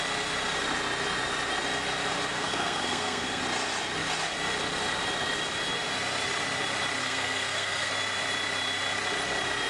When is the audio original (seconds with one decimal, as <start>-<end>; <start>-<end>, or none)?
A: 0.0-2.3; 3.4-7.0; 7.9-9.7